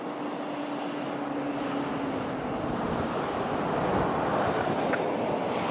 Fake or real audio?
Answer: real